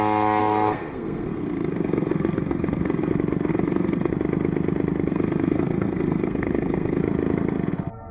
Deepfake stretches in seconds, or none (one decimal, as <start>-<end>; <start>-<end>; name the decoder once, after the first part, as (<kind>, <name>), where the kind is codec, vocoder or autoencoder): 0.4-3.1 (codec, SNAC); 3.5-4.1; 5.1-7.0